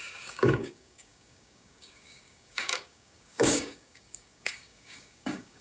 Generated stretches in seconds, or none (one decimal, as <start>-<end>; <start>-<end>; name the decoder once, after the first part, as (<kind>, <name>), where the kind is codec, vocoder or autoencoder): 0.0-5.6 (codec, DAC)